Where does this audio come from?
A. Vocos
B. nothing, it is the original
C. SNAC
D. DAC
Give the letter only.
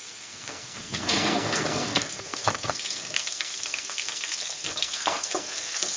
C